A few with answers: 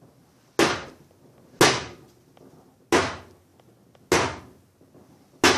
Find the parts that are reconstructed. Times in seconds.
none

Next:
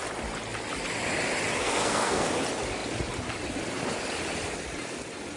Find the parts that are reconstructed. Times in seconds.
1.6-2.3 (codec, SNAC)

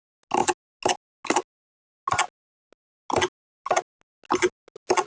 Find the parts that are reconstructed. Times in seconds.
none

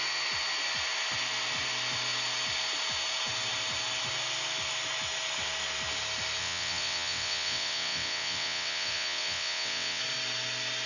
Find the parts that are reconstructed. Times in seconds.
6.4-10.0 (vocoder, WaveNeXt)

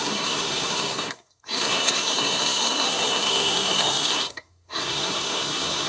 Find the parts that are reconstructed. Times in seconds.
0.0-5.9 (codec, SNAC)